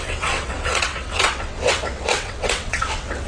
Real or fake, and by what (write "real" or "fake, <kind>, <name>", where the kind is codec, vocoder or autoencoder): fake, vocoder, WaveNeXt